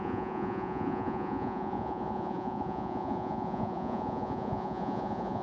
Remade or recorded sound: remade